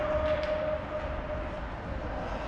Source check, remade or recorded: recorded